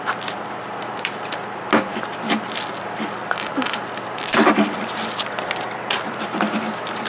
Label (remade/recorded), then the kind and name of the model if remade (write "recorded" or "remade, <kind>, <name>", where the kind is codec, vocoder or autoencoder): remade, vocoder, BigVGAN v2